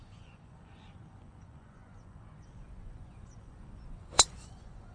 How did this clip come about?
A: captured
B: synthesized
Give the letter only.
B